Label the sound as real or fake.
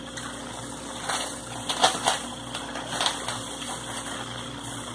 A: real